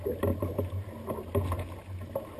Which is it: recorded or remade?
recorded